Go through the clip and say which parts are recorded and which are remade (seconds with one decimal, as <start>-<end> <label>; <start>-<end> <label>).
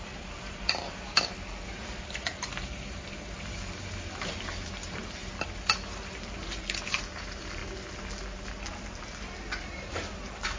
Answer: 0.0-7.6 remade; 7.6-9.6 recorded; 9.6-10.6 remade